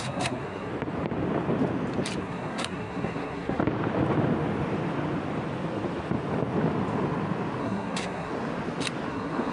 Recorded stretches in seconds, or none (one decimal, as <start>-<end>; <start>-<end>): 0.7-2.2; 3.6-7.6; 8.3-9.1